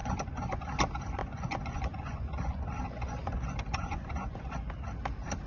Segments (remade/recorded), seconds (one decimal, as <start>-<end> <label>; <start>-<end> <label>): 0.0-0.6 remade; 0.6-1.2 recorded; 1.2-4.5 remade; 4.5-5.5 recorded

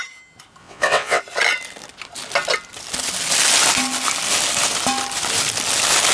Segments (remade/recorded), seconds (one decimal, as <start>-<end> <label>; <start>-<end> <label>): 0.0-0.6 recorded; 0.6-1.2 remade; 1.2-6.1 recorded

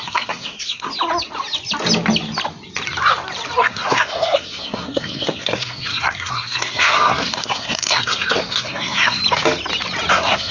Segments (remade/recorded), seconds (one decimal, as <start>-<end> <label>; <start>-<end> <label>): 0.0-0.9 remade; 0.9-3.6 recorded; 3.6-9.2 remade; 9.2-10.1 recorded; 10.1-10.5 remade